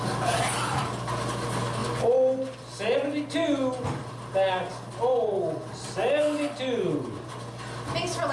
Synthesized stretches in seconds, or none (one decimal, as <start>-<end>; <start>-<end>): none